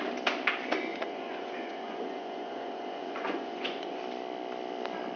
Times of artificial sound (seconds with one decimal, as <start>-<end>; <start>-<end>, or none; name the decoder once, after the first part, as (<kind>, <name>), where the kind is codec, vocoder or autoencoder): 0.9-4.0 (vocoder, Vocos)